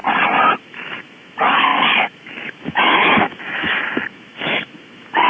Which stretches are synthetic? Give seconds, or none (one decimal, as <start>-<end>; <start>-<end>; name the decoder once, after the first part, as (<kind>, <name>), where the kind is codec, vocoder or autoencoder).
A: 0.6-5.3 (autoencoder, DAC-VAE)